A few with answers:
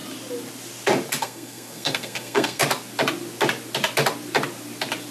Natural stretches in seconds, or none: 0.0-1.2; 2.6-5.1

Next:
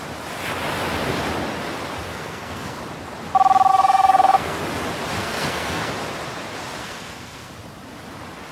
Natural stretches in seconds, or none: 0.0-2.1; 2.8-3.7; 4.6-5.2; 5.9-6.8; 7.5-8.5

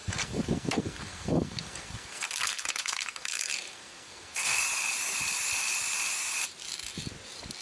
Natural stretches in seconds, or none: 4.6-7.6

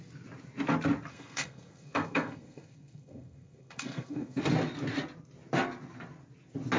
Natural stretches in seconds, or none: 0.0-1.1; 4.4-6.8

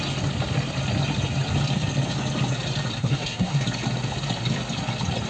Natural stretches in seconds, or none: 0.0-3.0; 3.6-5.3

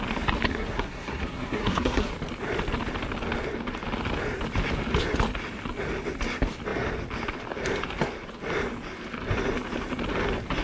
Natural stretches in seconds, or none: 0.0-0.5; 2.1-10.6